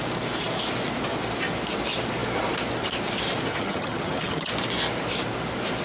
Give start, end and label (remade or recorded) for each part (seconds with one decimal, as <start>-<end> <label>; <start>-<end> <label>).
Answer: 0.0-3.5 recorded; 3.5-4.5 remade; 4.5-5.8 recorded